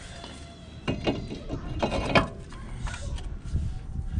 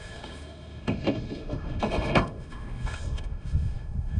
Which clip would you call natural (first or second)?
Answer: first